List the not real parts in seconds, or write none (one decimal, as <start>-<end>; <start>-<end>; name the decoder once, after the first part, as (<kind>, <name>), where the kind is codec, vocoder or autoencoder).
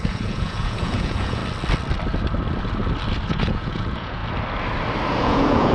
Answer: 0.0-1.4 (vocoder, Vocos); 3.3-4.2; 5.2-5.7